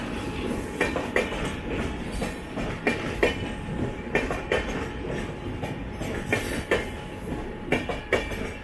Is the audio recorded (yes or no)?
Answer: yes